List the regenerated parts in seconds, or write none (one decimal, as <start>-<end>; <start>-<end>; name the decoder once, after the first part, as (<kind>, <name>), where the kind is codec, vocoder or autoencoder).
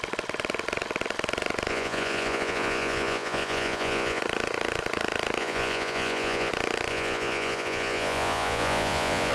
1.7-4.2 (vocoder, Vocos); 5.4-6.5; 6.9-9.3